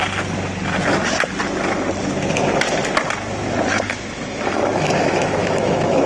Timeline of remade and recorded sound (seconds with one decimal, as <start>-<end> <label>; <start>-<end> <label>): 0.0-3.7 recorded; 3.7-6.1 remade